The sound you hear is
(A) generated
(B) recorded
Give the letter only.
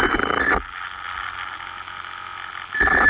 B